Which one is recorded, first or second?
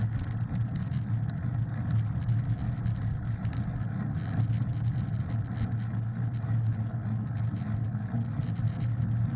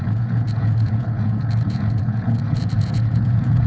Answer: first